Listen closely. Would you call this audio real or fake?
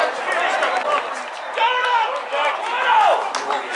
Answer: real